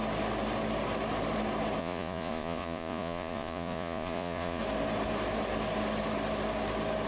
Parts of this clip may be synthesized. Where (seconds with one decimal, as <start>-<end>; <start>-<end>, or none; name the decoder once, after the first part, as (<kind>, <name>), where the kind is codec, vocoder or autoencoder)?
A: 1.8-4.6 (vocoder, Vocos)